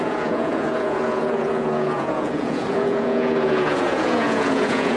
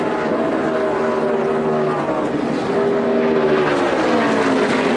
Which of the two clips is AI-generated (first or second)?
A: first